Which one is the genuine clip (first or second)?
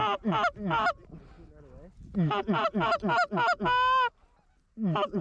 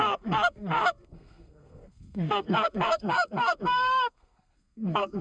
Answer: first